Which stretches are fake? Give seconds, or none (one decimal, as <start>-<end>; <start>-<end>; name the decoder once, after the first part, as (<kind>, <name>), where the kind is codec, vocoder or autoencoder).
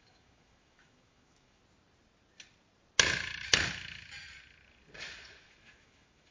0.0-1.6 (autoencoder, DAC-VAE); 5.4-6.3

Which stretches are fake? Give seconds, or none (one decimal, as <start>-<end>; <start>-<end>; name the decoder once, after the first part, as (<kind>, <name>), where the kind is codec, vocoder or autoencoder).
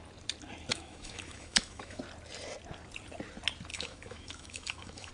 0.7-2.0 (autoencoder, DAC-VAE); 3.7-5.1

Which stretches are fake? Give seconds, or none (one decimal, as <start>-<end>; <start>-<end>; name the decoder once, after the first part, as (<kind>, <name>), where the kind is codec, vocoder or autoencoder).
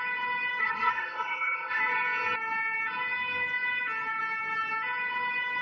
0.6-1.8 (codec, SNAC)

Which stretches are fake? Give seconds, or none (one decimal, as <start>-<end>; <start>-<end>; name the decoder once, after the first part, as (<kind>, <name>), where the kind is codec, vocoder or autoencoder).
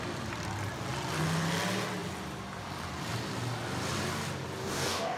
4.6-5.2 (codec, DAC)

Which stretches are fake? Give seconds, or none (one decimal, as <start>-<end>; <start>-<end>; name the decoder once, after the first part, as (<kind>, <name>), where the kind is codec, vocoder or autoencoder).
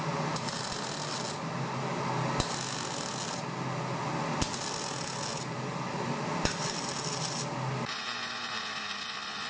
5.3-7.1 (vocoder, BigVGAN v2)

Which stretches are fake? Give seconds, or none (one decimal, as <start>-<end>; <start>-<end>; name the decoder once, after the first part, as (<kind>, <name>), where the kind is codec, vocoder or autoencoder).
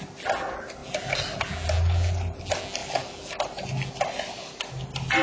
none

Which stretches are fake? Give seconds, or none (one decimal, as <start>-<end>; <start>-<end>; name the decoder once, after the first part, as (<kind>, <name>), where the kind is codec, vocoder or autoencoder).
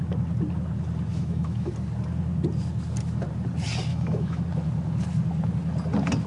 1.1-1.7 (autoencoder, DAC-VAE); 3.9-4.4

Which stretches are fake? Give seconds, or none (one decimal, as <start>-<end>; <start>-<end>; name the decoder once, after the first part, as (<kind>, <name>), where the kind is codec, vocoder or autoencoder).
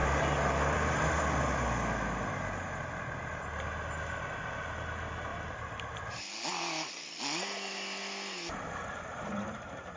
0.0-1.0 (vocoder, BigVGAN v2)